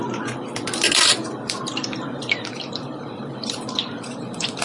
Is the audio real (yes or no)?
no